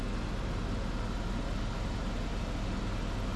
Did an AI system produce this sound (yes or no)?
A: no